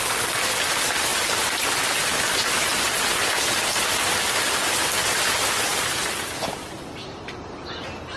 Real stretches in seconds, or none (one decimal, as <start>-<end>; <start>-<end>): 0.0-5.0; 7.6-8.2